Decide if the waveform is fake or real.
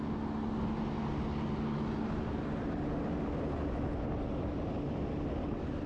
real